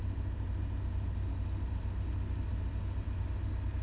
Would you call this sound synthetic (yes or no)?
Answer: no